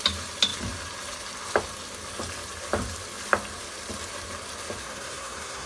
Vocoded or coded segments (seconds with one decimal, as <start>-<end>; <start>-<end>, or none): 4.8-5.7